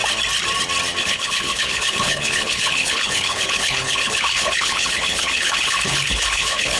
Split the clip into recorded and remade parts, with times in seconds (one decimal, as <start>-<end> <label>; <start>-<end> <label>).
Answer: 0.0-1.0 recorded; 1.0-6.8 remade